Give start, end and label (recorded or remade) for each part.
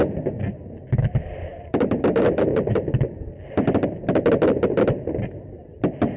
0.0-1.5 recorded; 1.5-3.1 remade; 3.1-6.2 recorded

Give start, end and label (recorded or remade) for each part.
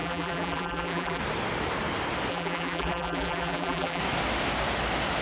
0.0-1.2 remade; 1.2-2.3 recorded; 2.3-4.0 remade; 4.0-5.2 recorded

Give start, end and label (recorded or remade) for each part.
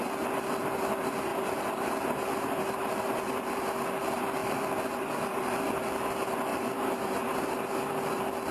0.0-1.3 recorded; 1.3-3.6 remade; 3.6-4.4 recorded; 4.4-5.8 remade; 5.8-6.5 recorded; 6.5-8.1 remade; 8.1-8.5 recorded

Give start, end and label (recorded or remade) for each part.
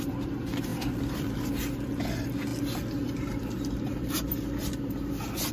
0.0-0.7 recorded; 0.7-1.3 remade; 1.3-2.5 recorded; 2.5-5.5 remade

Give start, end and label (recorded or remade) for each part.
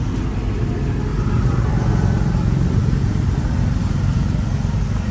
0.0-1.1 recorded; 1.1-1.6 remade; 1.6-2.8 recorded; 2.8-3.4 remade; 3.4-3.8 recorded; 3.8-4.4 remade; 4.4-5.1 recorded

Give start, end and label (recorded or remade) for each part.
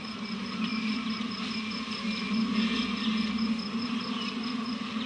0.0-5.1 recorded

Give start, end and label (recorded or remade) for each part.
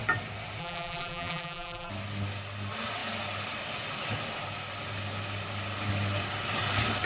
0.0-0.6 recorded; 0.6-1.9 remade; 1.9-7.1 recorded